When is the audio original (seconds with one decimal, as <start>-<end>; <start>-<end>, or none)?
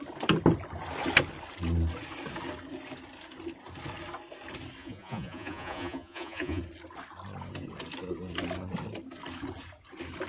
0.0-4.8; 6.6-10.3